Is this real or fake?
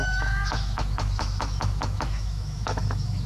fake